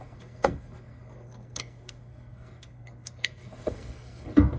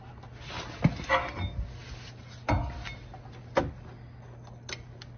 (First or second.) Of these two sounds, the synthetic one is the first